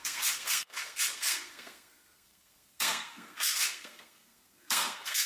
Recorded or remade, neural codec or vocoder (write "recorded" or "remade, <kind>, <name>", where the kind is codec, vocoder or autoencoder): remade, codec, SNAC